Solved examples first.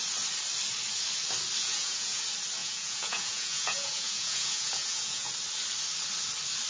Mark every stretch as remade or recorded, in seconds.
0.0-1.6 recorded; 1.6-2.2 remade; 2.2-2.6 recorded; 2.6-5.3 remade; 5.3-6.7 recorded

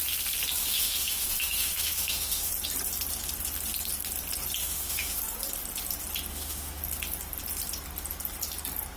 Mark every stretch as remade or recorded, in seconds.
0.0-0.6 recorded; 0.6-2.5 remade; 2.5-4.6 recorded; 4.6-5.2 remade; 5.2-6.3 recorded; 6.3-6.8 remade; 6.8-9.0 recorded